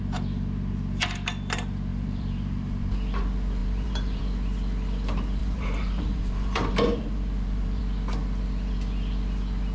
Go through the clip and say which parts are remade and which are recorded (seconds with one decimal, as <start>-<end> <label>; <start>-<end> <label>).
0.0-1.9 recorded; 1.9-2.7 remade; 2.7-3.6 recorded; 3.6-4.2 remade; 4.2-5.4 recorded; 5.4-7.8 remade; 7.8-9.7 recorded